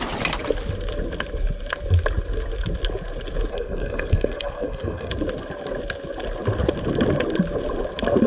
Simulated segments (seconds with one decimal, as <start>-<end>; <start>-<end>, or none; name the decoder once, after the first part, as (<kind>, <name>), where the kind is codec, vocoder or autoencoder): 3.5-5.1 (codec, SNAC)